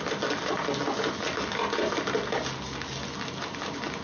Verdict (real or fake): real